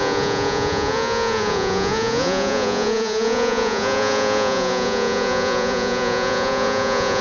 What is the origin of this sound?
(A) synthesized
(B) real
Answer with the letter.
A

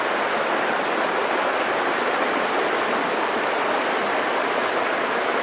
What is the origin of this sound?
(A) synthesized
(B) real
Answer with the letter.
B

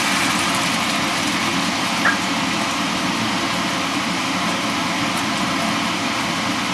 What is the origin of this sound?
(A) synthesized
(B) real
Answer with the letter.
B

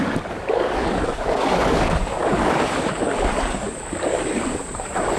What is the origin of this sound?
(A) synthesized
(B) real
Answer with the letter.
A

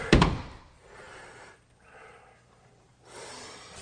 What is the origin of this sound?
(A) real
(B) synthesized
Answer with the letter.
B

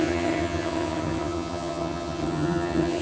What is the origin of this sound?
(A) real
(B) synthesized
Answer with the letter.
B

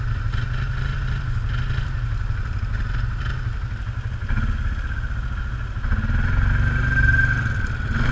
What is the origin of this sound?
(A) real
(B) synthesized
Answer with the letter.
A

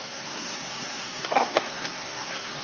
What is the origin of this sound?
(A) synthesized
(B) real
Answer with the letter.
A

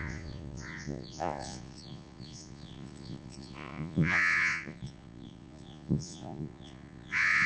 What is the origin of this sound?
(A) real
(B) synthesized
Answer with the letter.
B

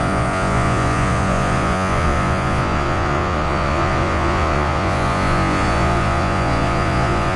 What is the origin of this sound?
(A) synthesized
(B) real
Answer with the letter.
A